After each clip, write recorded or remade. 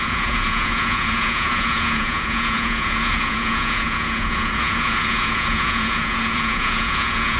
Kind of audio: remade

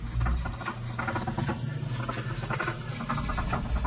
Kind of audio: recorded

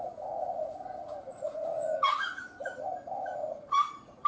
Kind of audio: remade